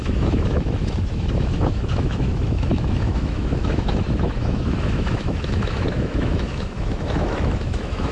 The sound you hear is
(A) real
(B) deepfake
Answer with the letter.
B